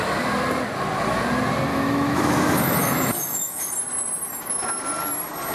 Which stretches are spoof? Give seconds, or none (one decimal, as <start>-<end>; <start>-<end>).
1.7-3.7